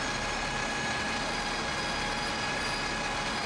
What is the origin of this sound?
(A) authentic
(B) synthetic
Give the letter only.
A